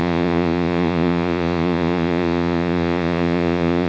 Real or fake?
fake